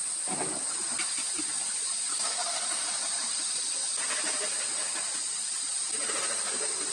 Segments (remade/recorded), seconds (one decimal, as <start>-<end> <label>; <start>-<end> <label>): 0.0-2.1 recorded; 2.1-2.9 remade; 2.9-6.9 recorded